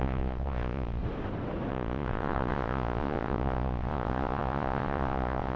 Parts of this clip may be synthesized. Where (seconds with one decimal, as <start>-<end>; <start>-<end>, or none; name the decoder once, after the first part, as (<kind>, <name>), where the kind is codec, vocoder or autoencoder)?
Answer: 0.0-1.0 (vocoder, Vocos); 1.7-5.6